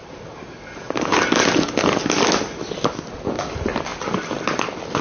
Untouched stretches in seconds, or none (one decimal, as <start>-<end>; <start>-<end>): 0.0-5.0

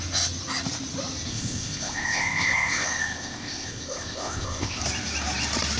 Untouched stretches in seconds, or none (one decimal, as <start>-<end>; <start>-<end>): 0.0-1.3; 4.8-5.8

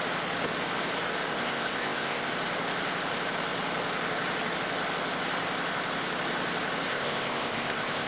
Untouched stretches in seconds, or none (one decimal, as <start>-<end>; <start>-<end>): 0.0-1.3; 2.3-6.9

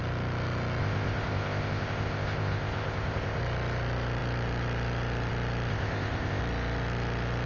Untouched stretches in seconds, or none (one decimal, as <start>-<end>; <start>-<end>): 0.0-0.8; 3.4-5.7; 6.4-7.5

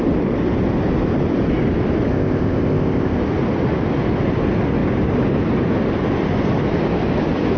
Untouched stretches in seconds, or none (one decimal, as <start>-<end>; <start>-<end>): 0.0-2.1; 3.2-7.6

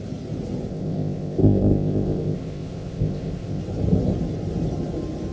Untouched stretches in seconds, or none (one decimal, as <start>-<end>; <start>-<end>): 0.0-0.7; 3.6-5.3